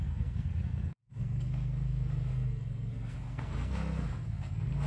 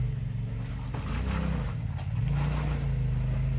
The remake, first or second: first